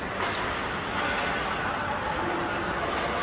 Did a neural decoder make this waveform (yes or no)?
no